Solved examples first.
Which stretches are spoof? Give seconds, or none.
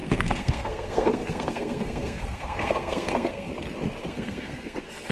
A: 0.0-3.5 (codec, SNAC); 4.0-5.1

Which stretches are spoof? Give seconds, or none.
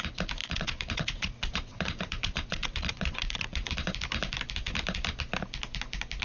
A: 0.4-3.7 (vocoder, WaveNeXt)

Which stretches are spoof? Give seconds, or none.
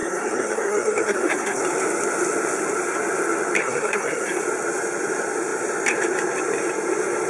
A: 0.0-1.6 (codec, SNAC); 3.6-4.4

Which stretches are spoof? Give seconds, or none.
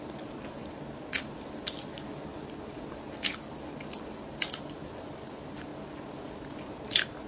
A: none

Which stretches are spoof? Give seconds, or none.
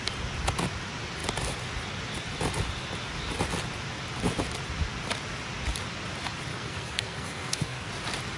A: 6.5-7.9 (codec, SNAC)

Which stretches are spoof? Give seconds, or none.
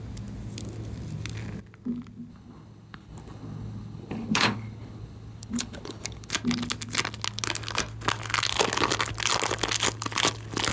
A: 2.3-6.3 (codec, HILCodec)